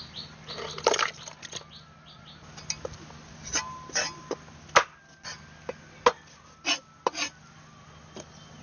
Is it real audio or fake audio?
real